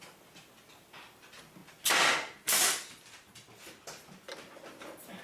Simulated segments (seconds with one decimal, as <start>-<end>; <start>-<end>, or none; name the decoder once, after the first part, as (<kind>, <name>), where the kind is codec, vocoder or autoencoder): none